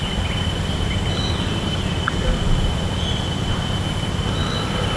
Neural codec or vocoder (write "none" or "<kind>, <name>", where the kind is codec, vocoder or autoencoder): none